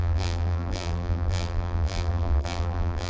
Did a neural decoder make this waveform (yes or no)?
yes